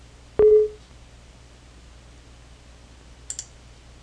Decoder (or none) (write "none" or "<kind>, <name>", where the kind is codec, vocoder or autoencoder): none